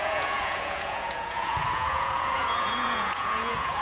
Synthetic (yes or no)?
yes